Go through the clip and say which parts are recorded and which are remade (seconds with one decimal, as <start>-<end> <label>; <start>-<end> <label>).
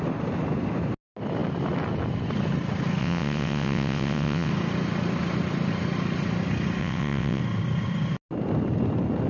0.0-3.0 recorded; 3.0-4.5 remade; 4.5-6.8 recorded; 6.8-7.4 remade; 7.4-9.3 recorded